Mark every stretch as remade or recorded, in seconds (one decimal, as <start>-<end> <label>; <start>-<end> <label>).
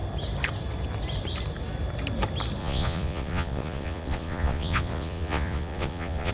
0.0-2.6 recorded; 2.6-6.3 remade